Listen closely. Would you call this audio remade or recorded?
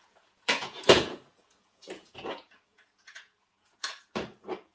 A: remade